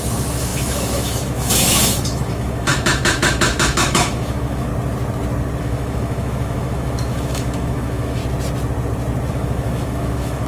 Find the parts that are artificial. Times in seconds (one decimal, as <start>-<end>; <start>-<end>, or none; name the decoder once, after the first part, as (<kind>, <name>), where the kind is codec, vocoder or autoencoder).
0.0-4.7 (autoencoder, DAC-VAE); 5.6-8.2; 9.3-10.5